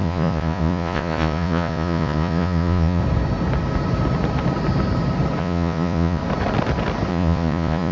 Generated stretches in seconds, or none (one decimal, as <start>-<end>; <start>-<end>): 0.0-3.0; 5.4-6.2; 7.1-7.9